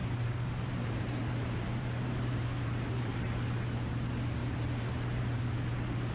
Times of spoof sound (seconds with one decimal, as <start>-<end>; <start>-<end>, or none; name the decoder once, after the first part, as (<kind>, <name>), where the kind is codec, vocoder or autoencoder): 0.0-3.3 (vocoder, BigVGAN v2); 4.4-5.2